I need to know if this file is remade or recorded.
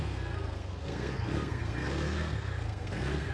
remade